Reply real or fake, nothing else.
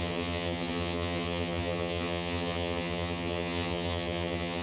fake